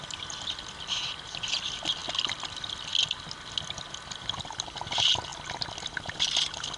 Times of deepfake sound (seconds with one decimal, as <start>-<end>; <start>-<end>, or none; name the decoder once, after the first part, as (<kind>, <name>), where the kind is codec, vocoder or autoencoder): none

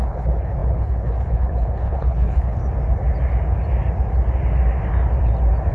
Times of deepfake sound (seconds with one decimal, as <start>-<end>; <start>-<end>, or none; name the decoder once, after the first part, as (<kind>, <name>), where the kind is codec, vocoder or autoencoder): 0.0-2.6 (codec, HILCodec)

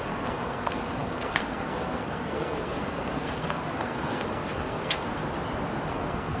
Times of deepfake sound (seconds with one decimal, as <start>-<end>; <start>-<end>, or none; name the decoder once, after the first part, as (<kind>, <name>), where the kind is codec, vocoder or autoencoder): 0.0-5.2 (codec, SNAC); 5.9-6.4

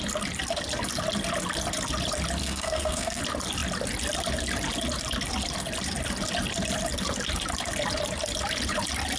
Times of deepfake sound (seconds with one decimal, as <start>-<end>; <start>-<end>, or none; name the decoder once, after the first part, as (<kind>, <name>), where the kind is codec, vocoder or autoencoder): 2.4-3.2 (codec, SNAC)

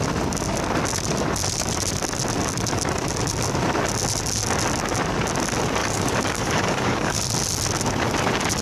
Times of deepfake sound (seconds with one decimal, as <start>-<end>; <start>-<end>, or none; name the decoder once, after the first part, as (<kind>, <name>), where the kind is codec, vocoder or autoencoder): 5.8-7.2 (codec, DAC)

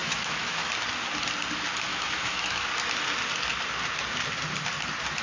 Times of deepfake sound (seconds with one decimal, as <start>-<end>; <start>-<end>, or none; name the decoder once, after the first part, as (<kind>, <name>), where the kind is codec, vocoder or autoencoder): 0.0-0.7 (autoencoder, DAC-VAE); 1.9-2.7

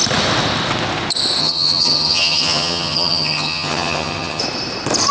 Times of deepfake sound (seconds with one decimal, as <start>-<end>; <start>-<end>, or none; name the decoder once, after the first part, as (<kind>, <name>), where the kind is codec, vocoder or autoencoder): 1.4-4.4 (vocoder, HiFi-GAN)